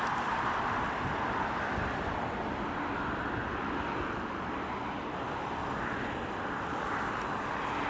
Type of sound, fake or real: real